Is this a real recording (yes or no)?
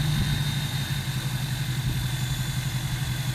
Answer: yes